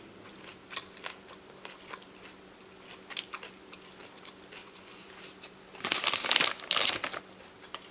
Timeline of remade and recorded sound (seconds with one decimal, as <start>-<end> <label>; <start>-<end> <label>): 0.0-4.6 recorded; 4.6-5.1 remade; 5.1-7.9 recorded